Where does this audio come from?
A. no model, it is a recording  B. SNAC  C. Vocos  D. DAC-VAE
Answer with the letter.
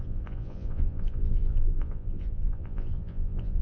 C